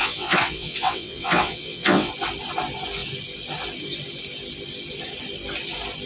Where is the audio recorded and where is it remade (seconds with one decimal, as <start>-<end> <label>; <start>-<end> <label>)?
0.0-2.1 remade; 2.1-6.1 recorded

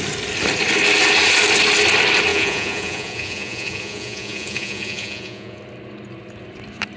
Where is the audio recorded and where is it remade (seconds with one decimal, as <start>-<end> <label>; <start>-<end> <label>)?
0.0-2.3 recorded; 2.3-5.6 remade; 5.6-7.0 recorded

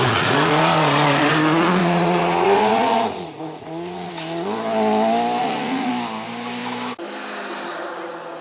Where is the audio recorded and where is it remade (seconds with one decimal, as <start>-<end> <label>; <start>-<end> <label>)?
0.0-1.3 remade; 1.3-1.8 recorded; 1.8-4.1 remade; 4.1-5.4 recorded; 5.4-5.9 remade; 5.9-8.4 recorded

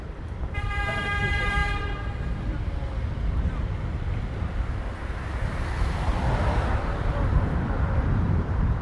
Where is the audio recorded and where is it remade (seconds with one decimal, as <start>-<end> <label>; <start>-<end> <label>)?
0.0-1.6 remade; 1.6-6.8 recorded; 6.8-8.8 remade

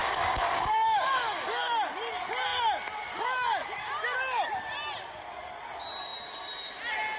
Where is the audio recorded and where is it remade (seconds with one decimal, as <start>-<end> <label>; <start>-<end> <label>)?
0.0-1.6 remade; 1.6-7.2 recorded

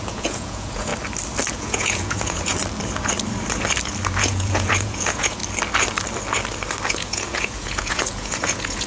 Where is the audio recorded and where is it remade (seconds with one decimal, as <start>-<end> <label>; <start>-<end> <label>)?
0.0-0.9 remade; 0.9-1.5 recorded; 1.5-2.5 remade; 2.5-4.2 recorded; 4.2-5.4 remade; 5.4-6.9 recorded; 6.9-8.9 remade

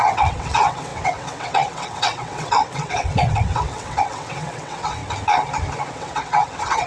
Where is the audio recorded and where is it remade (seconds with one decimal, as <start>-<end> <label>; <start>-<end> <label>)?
0.0-5.0 remade; 5.0-5.9 recorded; 5.9-6.9 remade

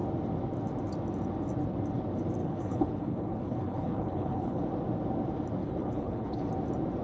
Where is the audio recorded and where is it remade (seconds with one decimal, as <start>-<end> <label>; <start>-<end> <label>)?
0.0-2.4 recorded; 2.4-4.6 remade; 4.6-5.6 recorded; 5.6-6.5 remade; 6.5-7.0 recorded